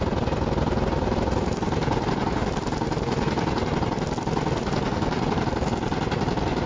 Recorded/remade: recorded